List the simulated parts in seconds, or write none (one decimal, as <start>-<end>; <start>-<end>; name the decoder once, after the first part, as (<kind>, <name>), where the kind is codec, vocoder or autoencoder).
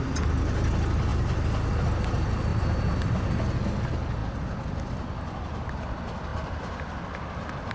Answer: 1.1-1.7 (vocoder, BigVGAN v2); 2.5-3.3; 4.2-4.9; 6.3-6.9